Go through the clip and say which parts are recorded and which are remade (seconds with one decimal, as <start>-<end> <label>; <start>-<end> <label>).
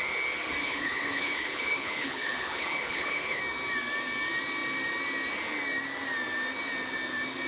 0.0-0.6 recorded; 0.6-3.4 remade; 3.4-7.5 recorded